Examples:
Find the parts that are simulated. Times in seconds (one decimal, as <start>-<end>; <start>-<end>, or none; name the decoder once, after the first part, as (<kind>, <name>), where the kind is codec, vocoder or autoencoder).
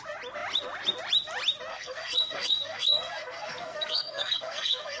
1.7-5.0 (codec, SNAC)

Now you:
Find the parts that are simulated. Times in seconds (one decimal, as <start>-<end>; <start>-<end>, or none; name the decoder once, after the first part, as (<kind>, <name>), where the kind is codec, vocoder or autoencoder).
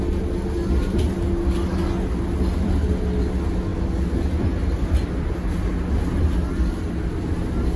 none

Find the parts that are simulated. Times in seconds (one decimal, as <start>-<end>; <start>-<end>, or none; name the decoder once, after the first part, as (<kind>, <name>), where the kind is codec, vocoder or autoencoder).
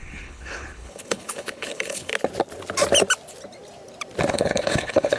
0.0-2.1 (codec, HILCodec); 4.3-5.2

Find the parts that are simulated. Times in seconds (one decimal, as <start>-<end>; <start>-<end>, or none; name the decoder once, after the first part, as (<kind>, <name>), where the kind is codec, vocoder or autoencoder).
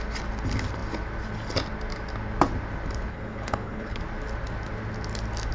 3.1-4.0 (codec, HILCodec)